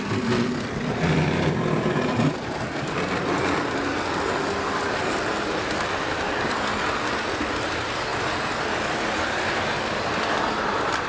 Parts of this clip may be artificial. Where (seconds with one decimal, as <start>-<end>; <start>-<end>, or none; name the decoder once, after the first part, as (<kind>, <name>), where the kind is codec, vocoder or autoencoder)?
none